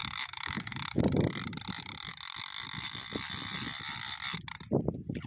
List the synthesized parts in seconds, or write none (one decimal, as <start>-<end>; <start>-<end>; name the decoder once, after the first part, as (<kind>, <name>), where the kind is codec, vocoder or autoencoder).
0.0-1.0 (autoencoder, DAC-VAE)

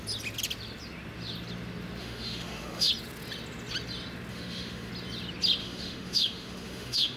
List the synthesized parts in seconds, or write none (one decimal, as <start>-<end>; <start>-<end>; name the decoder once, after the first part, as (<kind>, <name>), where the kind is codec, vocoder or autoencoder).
2.0-2.9 (autoencoder, DAC-VAE); 4.3-4.9; 5.6-7.2

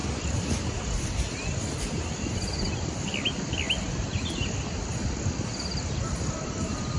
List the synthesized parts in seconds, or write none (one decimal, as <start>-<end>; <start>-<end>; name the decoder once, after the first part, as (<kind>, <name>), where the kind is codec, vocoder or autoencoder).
none